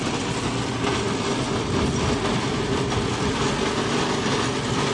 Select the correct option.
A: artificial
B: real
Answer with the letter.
B